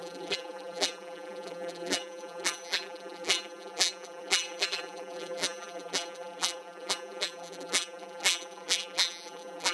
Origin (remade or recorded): remade